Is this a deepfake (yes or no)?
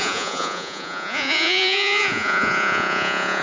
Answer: yes